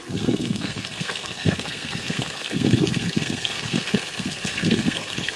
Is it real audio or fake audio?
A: fake